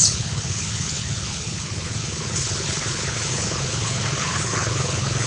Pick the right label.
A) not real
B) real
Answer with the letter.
A